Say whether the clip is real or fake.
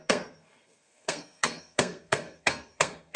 fake